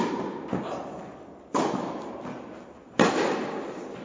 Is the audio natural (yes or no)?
yes